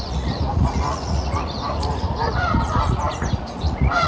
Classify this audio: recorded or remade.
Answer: remade